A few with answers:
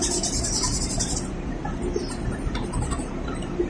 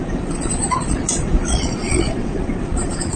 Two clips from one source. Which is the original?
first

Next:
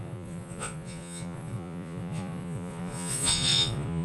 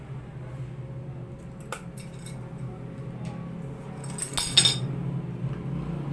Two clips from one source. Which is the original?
second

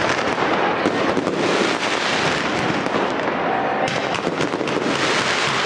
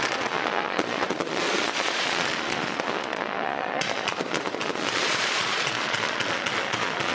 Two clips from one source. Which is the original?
first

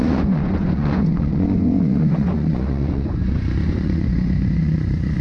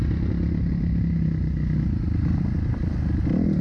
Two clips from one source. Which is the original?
second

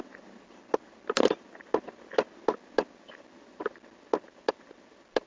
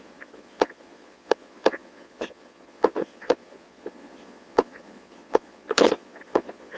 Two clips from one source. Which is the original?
first